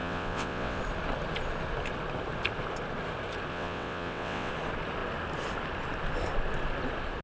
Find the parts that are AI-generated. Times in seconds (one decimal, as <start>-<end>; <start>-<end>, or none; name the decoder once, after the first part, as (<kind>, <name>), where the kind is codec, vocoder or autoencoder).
0.0-0.8 (vocoder, WaveNeXt); 3.5-4.5